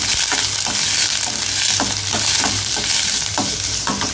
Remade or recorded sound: recorded